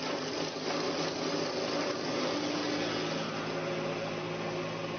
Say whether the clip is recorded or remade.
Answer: recorded